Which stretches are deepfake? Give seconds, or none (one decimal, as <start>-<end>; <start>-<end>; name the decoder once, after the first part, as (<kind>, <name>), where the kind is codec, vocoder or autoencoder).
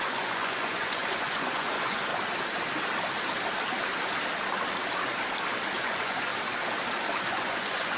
0.0-2.1 (vocoder, Vocos); 5.8-6.3; 7.3-8.0